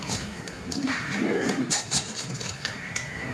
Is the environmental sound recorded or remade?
remade